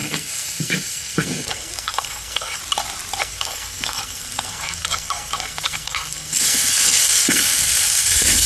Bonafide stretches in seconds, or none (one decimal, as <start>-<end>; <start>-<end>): 2.6-3.2